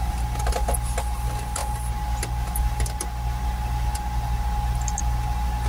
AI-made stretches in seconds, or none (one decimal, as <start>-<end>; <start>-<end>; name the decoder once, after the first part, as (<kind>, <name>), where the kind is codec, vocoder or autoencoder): none